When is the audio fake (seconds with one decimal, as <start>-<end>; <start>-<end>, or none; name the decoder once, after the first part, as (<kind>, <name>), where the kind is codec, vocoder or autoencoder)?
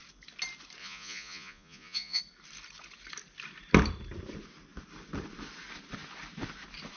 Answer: 0.8-2.2 (vocoder, Vocos)